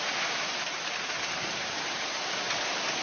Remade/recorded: recorded